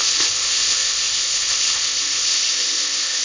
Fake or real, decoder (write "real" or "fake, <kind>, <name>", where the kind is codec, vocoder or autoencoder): fake, codec, ZipCodec